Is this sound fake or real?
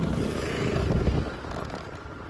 real